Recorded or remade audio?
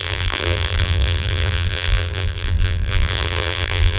remade